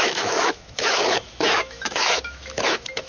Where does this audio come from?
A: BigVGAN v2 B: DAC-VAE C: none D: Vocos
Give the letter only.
B